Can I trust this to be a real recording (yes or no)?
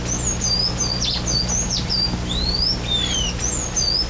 yes